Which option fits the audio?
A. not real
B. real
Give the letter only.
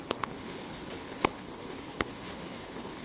A